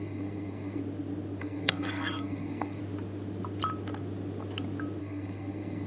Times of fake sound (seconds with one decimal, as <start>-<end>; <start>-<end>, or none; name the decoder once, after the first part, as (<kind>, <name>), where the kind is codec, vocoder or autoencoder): 0.0-0.8 (codec, SNAC); 1.4-2.8; 5.0-5.9